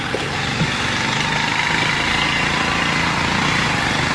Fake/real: real